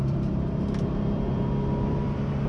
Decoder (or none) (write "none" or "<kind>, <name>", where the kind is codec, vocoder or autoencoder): vocoder, BigVGAN v2